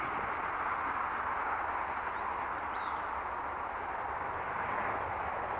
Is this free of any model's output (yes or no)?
yes